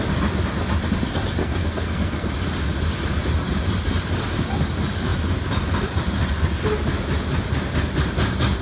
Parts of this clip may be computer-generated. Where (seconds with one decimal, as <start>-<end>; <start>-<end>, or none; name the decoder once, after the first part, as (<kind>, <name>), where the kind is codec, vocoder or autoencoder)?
1.4-2.3 (codec, SNAC)